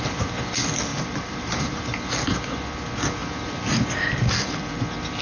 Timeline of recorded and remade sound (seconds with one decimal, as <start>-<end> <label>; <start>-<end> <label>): 0.0-0.9 recorded; 0.9-1.8 remade; 1.8-5.2 recorded